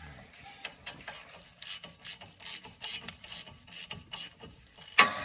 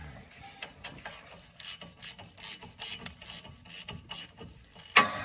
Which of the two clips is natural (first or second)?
second